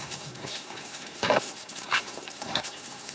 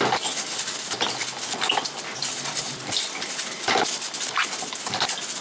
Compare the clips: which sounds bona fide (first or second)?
second